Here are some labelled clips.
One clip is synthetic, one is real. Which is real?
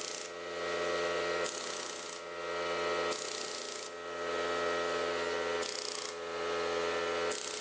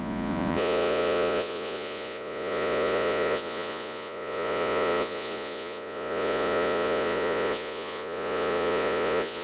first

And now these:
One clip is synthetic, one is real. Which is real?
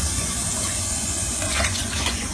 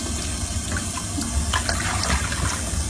second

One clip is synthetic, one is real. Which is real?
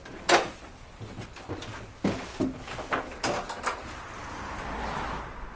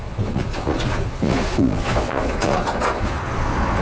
first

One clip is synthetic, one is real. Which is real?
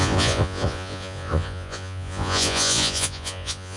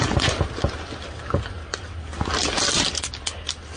second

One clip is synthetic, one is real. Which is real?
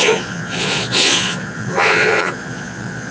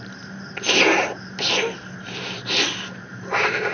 second